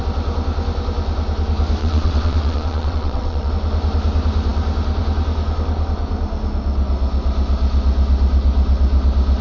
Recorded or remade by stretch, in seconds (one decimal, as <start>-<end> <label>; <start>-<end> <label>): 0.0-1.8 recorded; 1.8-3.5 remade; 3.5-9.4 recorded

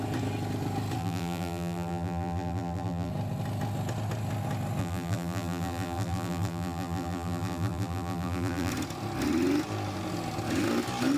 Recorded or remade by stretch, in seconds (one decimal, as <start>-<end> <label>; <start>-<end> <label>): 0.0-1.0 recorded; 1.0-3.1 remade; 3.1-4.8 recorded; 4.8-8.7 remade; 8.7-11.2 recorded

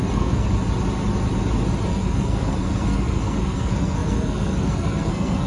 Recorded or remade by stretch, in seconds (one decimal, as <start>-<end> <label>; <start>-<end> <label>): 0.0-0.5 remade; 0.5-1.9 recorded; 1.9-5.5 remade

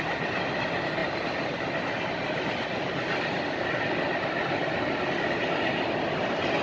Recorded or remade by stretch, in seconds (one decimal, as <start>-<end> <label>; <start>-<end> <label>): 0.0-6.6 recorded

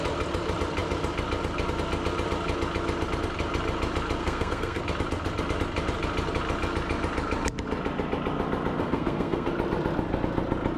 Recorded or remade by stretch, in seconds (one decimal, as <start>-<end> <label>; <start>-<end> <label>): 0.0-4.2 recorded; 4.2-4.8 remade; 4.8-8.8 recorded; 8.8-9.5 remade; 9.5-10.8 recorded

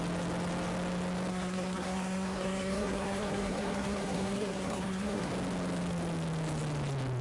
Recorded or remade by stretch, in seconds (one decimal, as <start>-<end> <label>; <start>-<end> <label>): 0.0-1.3 recorded; 1.3-5.3 remade; 5.3-7.2 recorded